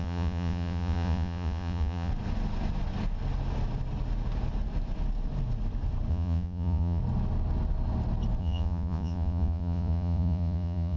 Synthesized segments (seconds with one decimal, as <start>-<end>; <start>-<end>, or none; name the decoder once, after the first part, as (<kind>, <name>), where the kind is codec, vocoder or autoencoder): 0.0-2.1 (vocoder, Vocos); 6.1-7.0; 8.4-11.0

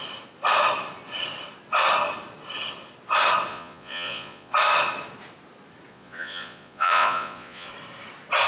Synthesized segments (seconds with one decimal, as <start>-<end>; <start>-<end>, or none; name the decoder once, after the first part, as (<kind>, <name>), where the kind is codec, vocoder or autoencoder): 3.5-4.5 (vocoder, Vocos); 5.9-7.7

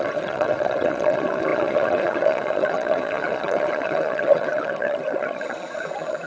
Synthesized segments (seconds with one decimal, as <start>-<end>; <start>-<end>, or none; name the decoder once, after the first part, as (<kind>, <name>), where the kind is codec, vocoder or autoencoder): 0.0-6.3 (vocoder, Vocos)

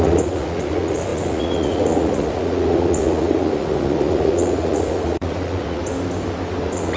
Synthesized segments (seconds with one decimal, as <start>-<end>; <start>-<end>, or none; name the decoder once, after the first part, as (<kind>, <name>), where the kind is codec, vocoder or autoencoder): 0.0-5.8 (vocoder, Vocos); 6.6-7.0

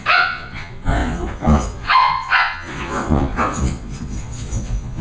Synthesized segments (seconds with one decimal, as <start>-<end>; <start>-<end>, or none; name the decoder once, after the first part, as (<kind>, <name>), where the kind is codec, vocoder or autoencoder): 0.0-5.0 (vocoder, Vocos)

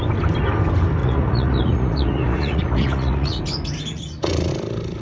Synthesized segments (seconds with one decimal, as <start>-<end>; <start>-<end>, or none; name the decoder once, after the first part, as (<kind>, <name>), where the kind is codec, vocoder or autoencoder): 1.0-3.4 (vocoder, Vocos); 3.9-4.5